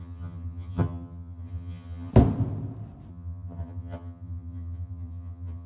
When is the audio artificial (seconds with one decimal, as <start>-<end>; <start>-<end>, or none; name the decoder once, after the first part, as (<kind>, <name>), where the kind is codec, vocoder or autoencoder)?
0.0-2.1 (vocoder, HiFi-GAN); 3.1-5.7